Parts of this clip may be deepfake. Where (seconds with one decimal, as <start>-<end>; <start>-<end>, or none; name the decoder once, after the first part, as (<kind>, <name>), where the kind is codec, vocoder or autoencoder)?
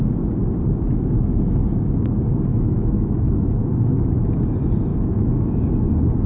2.5-4.1 (autoencoder, DAC-VAE); 4.9-5.6